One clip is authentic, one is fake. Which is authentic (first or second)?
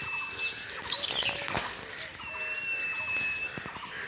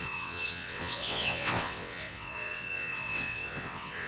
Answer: first